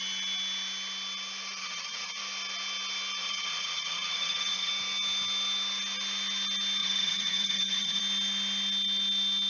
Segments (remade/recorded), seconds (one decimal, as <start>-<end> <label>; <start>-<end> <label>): 0.0-1.6 recorded; 1.6-2.2 remade; 2.2-3.2 recorded; 3.2-4.7 remade; 4.7-6.8 recorded; 6.8-8.0 remade; 8.0-9.5 recorded